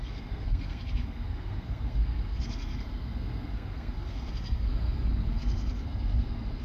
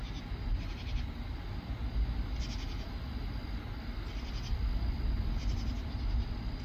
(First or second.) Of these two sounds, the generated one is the first